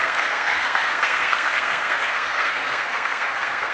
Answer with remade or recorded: remade